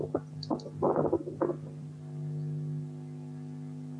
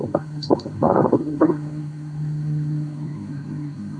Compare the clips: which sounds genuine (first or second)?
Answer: first